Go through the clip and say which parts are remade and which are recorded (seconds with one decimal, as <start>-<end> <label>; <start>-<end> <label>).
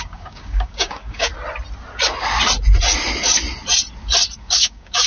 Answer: 0.0-1.3 remade; 1.3-4.4 recorded; 4.4-5.1 remade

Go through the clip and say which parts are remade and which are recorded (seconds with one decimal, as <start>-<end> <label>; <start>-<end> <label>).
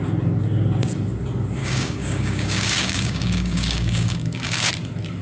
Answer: 0.0-1.6 recorded; 1.6-4.7 remade; 4.7-5.2 recorded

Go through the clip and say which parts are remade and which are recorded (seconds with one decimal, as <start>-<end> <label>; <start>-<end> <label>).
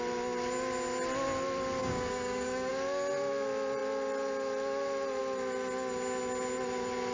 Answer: 0.0-1.8 recorded; 1.8-2.7 remade; 2.7-7.1 recorded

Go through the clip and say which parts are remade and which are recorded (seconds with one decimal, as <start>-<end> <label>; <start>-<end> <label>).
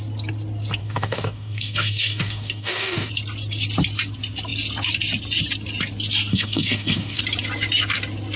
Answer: 0.0-0.8 recorded; 0.8-3.1 remade; 3.1-6.3 recorded; 6.3-7.2 remade; 7.2-8.4 recorded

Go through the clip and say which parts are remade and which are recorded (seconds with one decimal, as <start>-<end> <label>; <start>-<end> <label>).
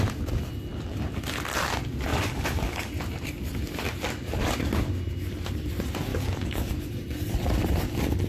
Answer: 0.0-2.1 recorded; 2.1-2.9 remade; 2.9-6.1 recorded; 6.1-6.7 remade; 6.7-8.3 recorded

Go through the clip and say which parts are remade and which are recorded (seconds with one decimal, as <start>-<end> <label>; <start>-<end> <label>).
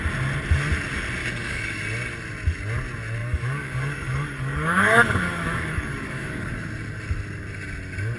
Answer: 0.0-1.2 recorded; 1.2-1.8 remade; 1.8-3.2 recorded; 3.2-6.5 remade; 6.5-8.2 recorded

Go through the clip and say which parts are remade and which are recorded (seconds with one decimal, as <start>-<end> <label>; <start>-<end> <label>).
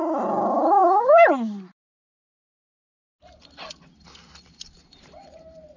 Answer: 0.0-5.8 recorded